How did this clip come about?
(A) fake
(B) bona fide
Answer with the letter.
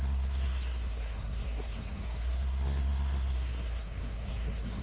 A